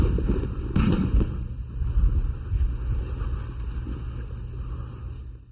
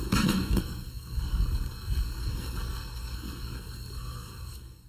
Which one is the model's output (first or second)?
second